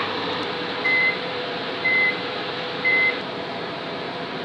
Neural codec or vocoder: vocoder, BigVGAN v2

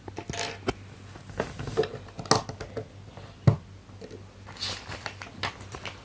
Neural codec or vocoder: none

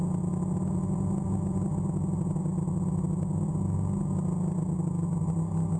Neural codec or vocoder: none